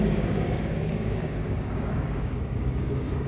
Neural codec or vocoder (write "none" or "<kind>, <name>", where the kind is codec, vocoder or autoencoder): codec, DAC